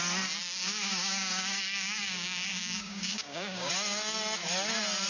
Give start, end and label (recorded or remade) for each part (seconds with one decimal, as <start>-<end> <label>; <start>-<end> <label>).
0.0-0.6 recorded; 0.6-3.7 remade; 3.7-5.1 recorded